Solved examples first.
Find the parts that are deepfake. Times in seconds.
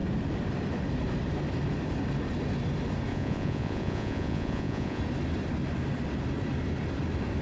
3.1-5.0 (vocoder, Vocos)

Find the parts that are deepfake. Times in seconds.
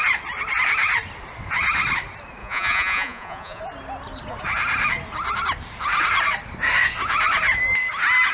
2.4-3.6 (vocoder, Vocos)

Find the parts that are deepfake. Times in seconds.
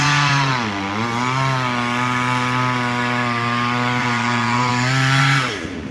0.0-0.5 (vocoder, Vocos); 4.0-4.7; 5.2-5.9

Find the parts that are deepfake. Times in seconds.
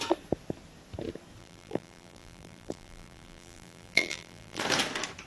1.4-4.6 (vocoder, BigVGAN v2)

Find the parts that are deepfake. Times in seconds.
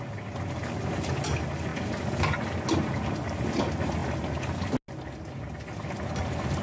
none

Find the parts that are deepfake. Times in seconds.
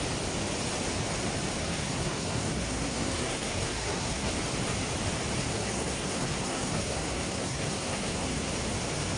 1.6-4.3 (codec, SNAC); 5.5-8.5